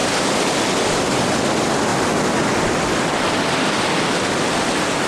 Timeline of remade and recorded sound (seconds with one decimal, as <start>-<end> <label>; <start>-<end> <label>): 0.0-0.6 remade; 0.6-5.1 recorded